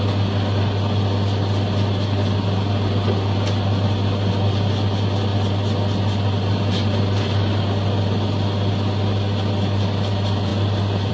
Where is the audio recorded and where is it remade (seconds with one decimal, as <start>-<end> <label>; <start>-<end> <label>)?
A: 0.0-11.1 recorded